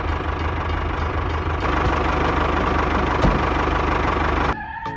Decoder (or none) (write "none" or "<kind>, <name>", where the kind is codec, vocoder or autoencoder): none